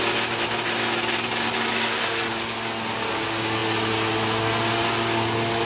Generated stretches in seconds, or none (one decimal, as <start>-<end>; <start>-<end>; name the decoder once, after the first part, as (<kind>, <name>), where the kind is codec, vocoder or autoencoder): none